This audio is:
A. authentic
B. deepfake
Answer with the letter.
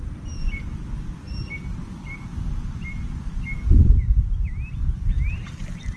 A